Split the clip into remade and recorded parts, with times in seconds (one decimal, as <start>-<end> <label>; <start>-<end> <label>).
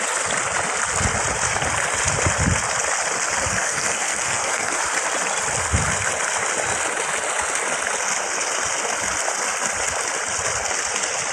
0.0-3.5 recorded; 3.5-4.8 remade; 4.8-11.3 recorded